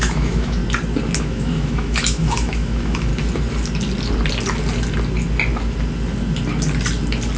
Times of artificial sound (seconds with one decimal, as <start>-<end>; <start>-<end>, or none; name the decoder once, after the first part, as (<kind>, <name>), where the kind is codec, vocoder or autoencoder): 0.0-0.6 (autoencoder, DAC-VAE); 1.2-3.1